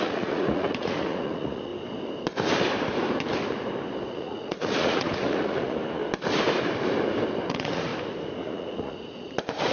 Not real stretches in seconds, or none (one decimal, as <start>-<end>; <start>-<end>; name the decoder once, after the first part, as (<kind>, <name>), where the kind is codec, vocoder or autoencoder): 0.0-1.7 (vocoder, Vocos); 4.1-6.0; 7.5-7.9; 8.4-9.7